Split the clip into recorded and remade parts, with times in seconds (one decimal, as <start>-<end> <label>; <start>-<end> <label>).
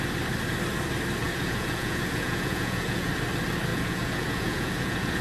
0.0-1.2 recorded; 1.2-3.1 remade; 3.1-3.7 recorded; 3.7-5.2 remade